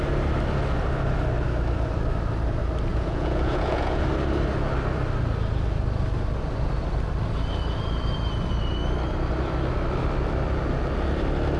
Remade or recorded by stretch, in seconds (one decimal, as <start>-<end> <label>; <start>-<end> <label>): 0.0-2.9 recorded; 2.9-4.0 remade; 4.0-11.6 recorded